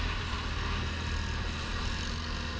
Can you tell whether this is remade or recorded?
recorded